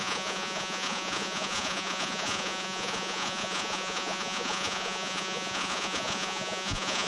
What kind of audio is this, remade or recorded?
remade